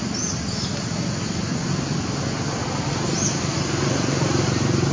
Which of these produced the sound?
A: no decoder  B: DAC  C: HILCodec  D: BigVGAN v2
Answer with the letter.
A